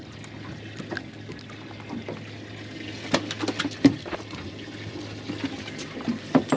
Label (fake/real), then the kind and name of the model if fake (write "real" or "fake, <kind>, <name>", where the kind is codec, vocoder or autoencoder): real